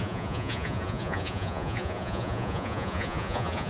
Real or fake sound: fake